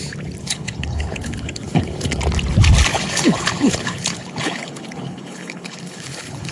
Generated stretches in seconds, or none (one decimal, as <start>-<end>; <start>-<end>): 0.4-2.2; 2.9-6.5